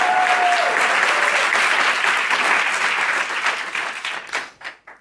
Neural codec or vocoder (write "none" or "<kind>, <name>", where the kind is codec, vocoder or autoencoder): none